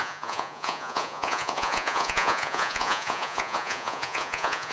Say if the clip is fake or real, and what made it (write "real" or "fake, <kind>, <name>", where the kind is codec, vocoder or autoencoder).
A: fake, vocoder, Vocos